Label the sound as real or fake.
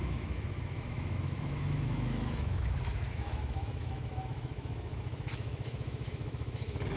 fake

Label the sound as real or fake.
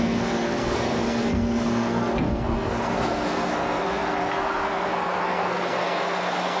fake